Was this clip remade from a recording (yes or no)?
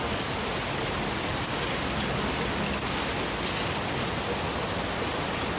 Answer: no